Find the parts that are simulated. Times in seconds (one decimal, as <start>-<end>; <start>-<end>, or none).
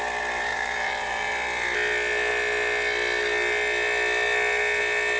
0.5-1.3